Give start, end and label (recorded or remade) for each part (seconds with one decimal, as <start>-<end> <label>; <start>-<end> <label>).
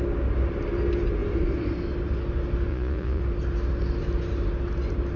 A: 0.0-2.7 recorded; 2.7-3.2 remade; 3.2-5.2 recorded